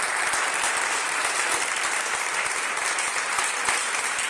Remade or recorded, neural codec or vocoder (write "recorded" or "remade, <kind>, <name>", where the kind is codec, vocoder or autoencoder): remade, vocoder, BigVGAN v2